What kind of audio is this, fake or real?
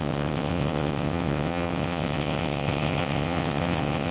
fake